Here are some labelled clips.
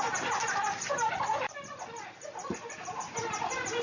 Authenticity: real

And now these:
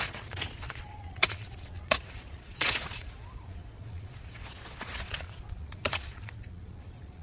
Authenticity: fake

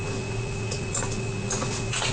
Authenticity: fake